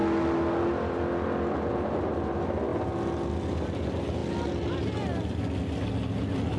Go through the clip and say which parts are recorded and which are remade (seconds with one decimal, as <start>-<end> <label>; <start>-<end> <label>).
0.0-6.6 recorded